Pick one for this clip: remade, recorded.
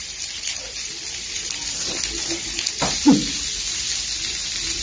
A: remade